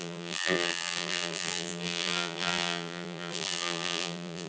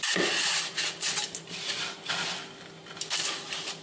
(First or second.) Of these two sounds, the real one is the second